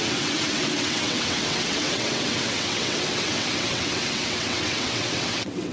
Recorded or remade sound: remade